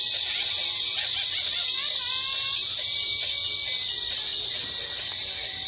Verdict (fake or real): real